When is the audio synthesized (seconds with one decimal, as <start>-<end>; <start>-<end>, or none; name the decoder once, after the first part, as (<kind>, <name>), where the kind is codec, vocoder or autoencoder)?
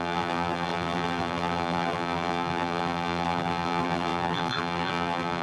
0.0-5.4 (vocoder, BigVGAN v2)